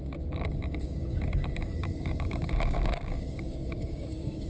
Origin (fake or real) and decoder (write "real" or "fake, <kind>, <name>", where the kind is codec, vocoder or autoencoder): fake, codec, DAC